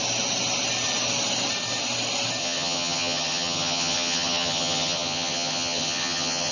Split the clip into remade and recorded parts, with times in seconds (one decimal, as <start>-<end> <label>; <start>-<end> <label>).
0.0-2.4 recorded; 2.4-6.5 remade